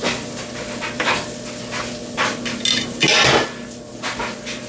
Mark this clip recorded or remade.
recorded